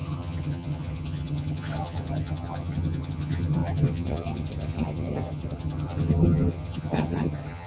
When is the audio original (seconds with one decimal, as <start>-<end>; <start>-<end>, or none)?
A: none